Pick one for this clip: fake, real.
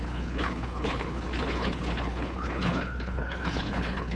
fake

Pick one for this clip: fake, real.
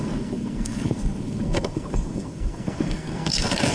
fake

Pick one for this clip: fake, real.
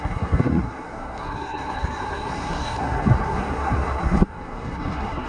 fake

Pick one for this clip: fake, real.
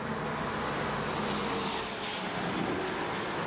real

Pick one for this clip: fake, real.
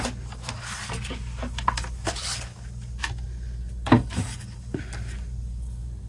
real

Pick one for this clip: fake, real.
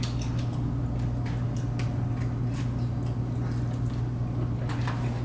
real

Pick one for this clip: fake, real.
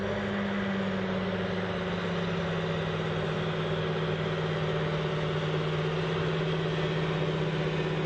real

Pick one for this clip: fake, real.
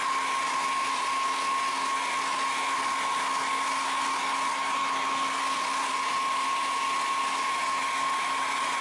real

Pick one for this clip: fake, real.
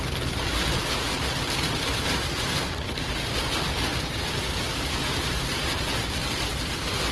real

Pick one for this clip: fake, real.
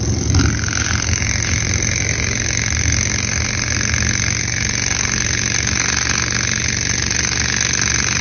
real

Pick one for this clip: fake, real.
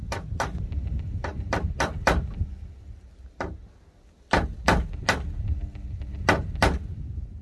real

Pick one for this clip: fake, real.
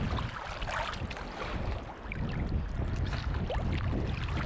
real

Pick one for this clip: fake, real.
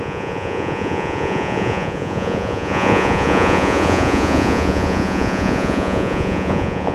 fake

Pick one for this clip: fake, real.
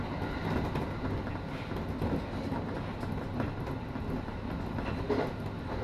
real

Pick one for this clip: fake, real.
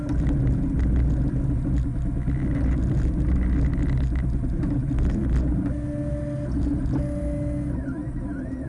real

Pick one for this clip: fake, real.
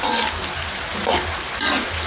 real